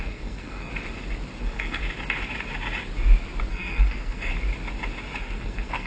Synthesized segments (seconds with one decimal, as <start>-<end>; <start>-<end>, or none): 0.0-0.7; 1.4-1.8; 3.5-4.3; 5.2-5.9